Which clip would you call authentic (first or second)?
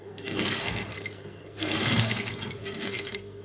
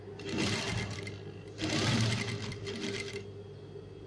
second